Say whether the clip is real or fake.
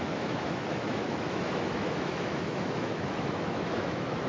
fake